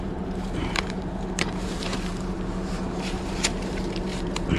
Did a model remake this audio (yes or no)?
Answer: yes